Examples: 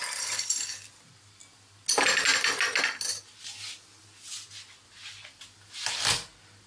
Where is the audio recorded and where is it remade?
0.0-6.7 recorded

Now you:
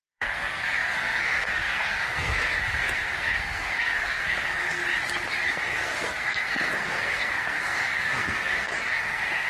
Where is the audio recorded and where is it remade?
0.0-4.8 remade; 4.8-5.5 recorded; 5.5-9.5 remade

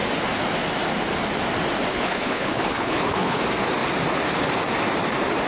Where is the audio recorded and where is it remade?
0.0-1.9 recorded; 1.9-3.4 remade; 3.4-5.5 recorded

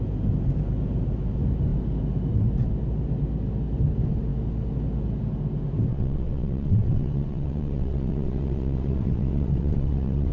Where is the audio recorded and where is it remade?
0.0-5.9 recorded; 5.9-10.3 remade

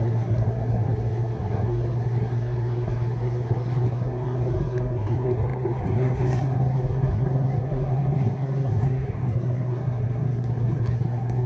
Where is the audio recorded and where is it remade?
0.0-11.5 remade

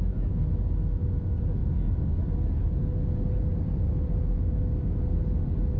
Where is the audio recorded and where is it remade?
0.0-5.8 recorded

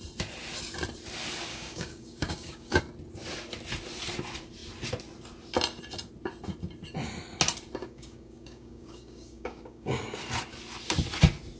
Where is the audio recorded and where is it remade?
0.0-1.5 recorded; 1.5-2.8 remade; 2.8-7.8 recorded; 7.8-10.0 remade; 10.0-11.6 recorded